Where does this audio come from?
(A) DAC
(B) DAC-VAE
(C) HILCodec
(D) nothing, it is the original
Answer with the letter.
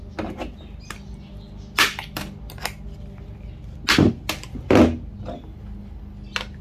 D